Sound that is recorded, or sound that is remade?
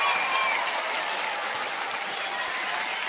recorded